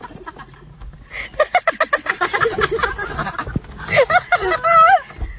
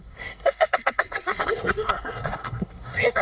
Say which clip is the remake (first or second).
second